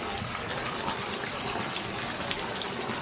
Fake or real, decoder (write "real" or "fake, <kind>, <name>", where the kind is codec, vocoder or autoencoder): real